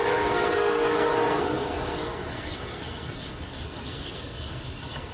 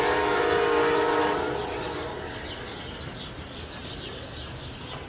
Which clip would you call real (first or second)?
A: second